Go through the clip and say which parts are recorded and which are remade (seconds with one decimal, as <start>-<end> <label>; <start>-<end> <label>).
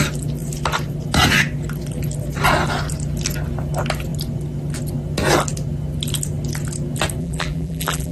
0.0-7.2 recorded; 7.2-8.1 remade